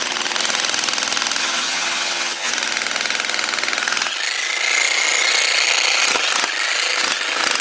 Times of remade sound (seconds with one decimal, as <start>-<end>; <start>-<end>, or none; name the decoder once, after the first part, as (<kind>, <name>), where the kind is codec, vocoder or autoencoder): 1.4-2.5 (vocoder, HiFi-GAN)